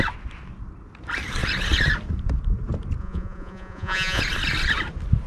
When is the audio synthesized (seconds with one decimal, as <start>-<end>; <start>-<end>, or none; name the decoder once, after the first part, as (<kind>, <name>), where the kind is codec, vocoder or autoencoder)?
3.0-4.2 (vocoder, Vocos)

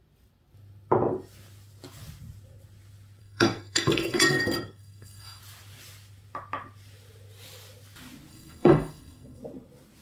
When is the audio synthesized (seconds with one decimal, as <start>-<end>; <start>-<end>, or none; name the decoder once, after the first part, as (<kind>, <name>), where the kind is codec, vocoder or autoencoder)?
3.2-5.4 (codec, SNAC); 8.3-9.4